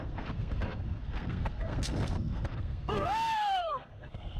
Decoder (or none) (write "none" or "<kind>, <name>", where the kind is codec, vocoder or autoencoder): codec, SNAC